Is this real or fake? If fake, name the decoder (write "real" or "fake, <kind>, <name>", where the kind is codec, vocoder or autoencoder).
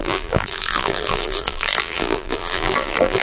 fake, vocoder, BigVGAN v2